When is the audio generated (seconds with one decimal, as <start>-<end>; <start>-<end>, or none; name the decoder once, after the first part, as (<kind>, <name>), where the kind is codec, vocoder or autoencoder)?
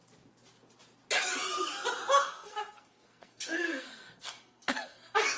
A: 2.2-5.4 (codec, SNAC)